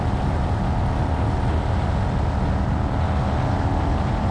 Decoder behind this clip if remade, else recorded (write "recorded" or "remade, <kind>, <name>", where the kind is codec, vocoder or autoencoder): recorded